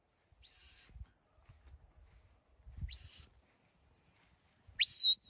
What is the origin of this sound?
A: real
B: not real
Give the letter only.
A